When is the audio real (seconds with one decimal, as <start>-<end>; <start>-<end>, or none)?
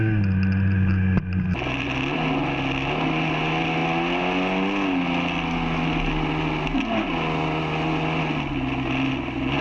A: 0.0-9.6